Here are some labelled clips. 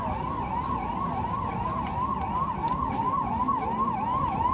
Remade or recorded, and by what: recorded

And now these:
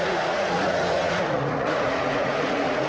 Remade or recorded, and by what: remade, vocoder, Vocos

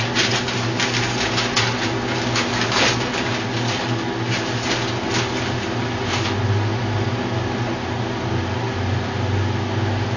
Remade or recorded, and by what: recorded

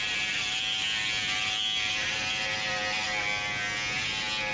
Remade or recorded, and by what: recorded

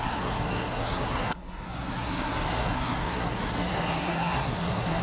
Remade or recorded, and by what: remade, codec, SNAC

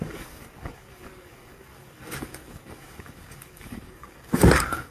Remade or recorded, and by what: remade, codec, DAC